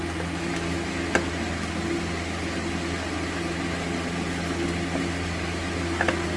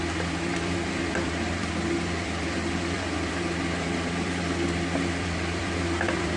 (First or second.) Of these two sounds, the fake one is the second